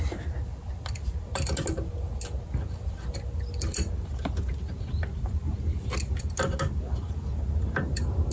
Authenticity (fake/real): real